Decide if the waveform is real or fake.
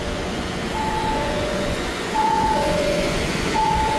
fake